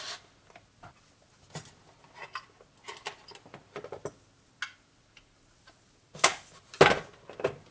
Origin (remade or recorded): recorded